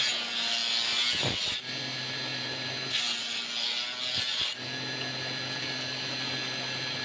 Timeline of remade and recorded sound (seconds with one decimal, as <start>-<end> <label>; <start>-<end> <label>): 0.0-2.3 recorded; 2.3-3.0 remade; 3.0-7.0 recorded